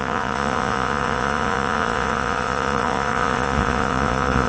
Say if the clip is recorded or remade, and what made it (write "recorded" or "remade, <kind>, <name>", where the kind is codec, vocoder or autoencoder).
remade, vocoder, Vocos